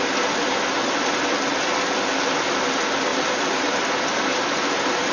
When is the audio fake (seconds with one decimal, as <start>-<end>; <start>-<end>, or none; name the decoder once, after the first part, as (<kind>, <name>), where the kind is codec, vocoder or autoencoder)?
none

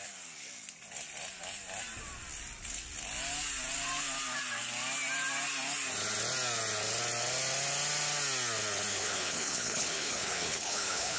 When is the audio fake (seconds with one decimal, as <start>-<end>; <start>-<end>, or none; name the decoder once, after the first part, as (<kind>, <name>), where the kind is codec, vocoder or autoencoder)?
8.9-11.2 (codec, HILCodec)

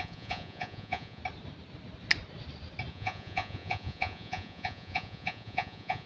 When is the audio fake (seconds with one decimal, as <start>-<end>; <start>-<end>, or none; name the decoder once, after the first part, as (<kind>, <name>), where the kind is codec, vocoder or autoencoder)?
0.0-1.2 (vocoder, Vocos); 2.9-6.1

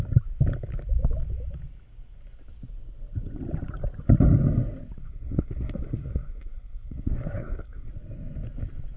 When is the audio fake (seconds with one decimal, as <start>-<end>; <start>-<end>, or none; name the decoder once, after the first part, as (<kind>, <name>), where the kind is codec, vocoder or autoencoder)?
5.0-7.9 (codec, SNAC)

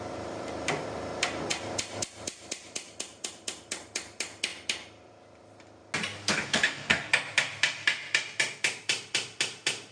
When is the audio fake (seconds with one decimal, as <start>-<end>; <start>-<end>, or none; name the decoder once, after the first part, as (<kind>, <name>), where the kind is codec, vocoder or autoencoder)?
6.3-7.1 (codec, DAC)

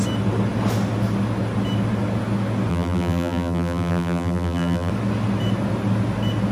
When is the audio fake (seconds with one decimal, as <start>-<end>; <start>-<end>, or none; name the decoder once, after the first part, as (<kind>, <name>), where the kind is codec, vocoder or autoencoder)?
2.7-4.9 (vocoder, BigVGAN v2)